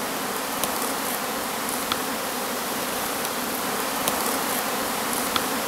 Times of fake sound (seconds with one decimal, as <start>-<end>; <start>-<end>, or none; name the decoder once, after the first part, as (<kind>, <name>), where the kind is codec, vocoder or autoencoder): 0.0-0.6 (vocoder, BigVGAN v2); 2.0-5.7